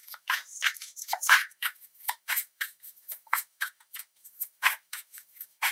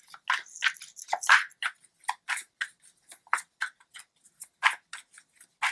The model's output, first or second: first